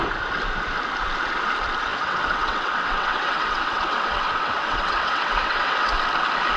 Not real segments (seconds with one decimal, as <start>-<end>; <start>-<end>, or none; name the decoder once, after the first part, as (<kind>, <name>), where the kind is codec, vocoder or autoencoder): 1.9-5.9 (vocoder, WaveNeXt)

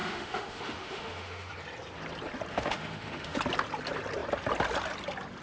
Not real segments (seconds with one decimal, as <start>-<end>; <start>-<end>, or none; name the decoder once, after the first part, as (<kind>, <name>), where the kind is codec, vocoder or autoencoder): 0.0-1.5 (autoencoder, DAC-VAE); 2.5-3.4

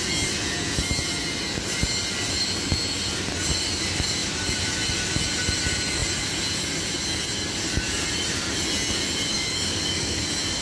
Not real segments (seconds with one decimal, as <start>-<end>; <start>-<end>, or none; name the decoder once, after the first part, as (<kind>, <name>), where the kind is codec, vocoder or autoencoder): 9.3-10.2 (codec, DAC)

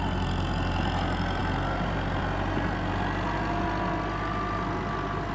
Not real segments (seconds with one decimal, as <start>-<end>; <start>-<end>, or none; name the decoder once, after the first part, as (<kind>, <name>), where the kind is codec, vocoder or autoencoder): none

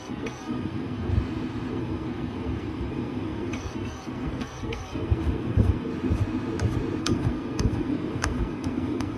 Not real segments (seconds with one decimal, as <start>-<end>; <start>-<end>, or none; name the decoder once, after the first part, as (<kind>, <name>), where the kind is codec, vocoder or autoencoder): 0.0-1.1 (codec, SNAC); 1.7-5.9; 7.0-9.2